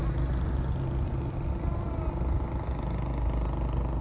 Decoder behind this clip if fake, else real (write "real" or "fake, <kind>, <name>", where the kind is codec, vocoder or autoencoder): real